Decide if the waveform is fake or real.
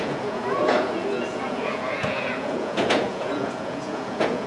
fake